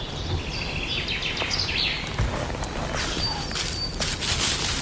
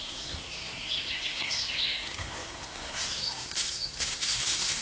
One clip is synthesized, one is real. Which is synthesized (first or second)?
second